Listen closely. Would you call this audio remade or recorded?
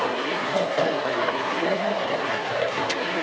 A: remade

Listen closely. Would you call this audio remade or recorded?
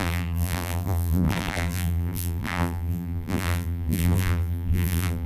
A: remade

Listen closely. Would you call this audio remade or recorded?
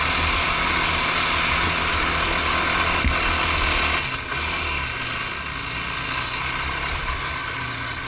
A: recorded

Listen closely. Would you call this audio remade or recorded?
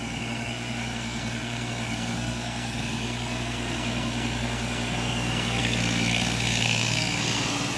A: remade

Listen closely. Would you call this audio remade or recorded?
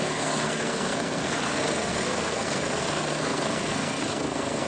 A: remade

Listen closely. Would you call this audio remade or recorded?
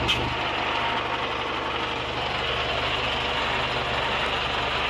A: recorded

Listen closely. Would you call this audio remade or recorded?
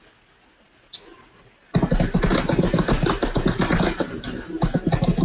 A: recorded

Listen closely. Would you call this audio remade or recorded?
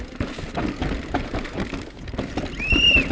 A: recorded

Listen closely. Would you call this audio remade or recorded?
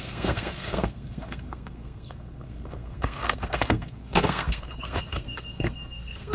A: remade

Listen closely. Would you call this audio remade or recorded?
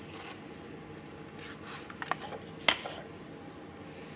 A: recorded